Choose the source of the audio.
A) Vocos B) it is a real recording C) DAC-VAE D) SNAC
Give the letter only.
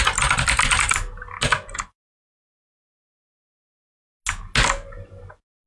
B